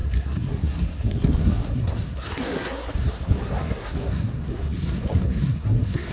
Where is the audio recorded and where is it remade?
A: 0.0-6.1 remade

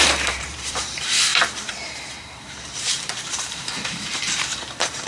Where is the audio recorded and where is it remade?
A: 0.0-5.1 remade

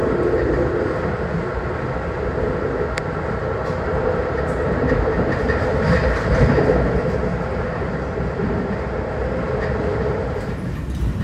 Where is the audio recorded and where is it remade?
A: 0.0-11.2 recorded